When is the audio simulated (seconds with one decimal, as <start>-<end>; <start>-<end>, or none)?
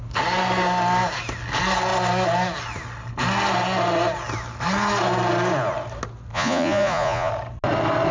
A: 6.3-7.3